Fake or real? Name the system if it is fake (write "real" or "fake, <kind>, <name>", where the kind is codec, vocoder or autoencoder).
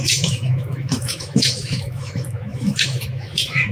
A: fake, autoencoder, DAC-VAE